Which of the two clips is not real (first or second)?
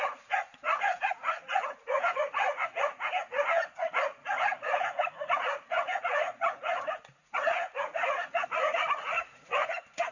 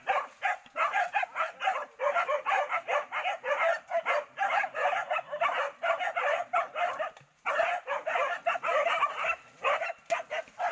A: first